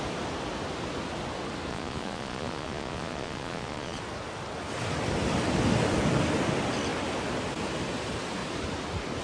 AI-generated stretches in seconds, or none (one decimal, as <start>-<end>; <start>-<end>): 1.7-4.0